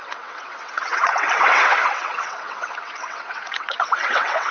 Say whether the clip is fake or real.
fake